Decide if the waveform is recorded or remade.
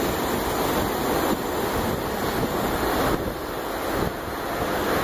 recorded